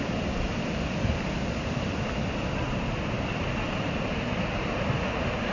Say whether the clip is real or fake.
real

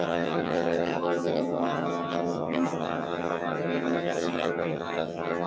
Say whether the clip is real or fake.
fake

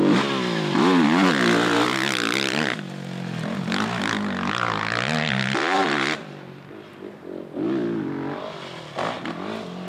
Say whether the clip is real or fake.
real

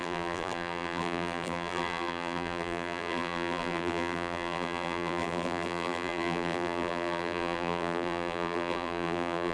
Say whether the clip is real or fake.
fake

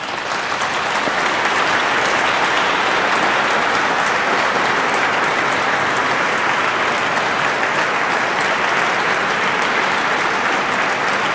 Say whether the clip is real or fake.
real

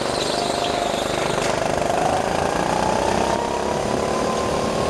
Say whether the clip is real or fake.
real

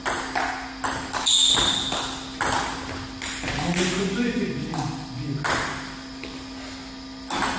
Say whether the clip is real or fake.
real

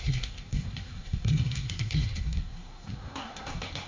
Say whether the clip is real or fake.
fake